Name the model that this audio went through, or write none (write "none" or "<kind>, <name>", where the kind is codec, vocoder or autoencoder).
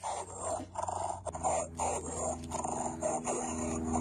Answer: none